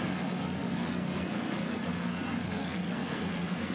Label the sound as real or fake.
fake